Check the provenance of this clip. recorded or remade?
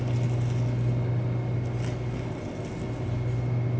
recorded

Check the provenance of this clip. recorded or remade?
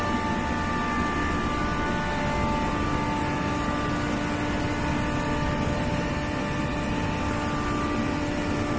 recorded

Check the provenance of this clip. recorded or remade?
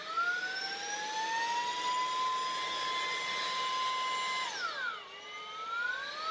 recorded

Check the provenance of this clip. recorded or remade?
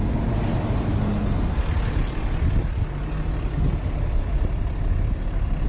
recorded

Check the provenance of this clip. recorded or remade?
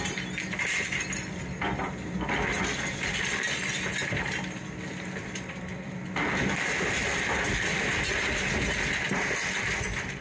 recorded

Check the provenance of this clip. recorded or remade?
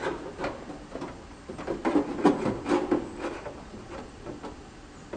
recorded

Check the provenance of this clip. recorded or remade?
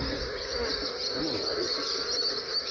recorded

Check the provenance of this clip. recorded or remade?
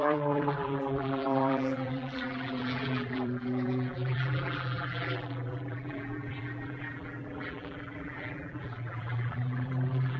remade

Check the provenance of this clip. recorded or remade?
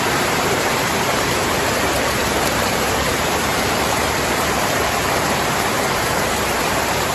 remade